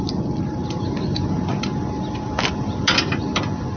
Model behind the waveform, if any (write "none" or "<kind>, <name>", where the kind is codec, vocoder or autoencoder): vocoder, BigVGAN v2